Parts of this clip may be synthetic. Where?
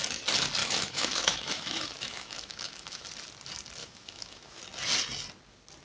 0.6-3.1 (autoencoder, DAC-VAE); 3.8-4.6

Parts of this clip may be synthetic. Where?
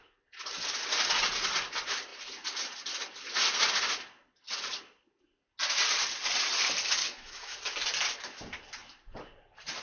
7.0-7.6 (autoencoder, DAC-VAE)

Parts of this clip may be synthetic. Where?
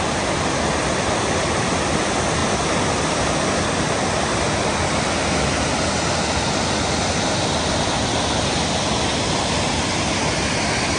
none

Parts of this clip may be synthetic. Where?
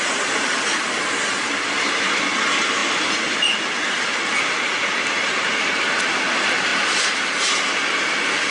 none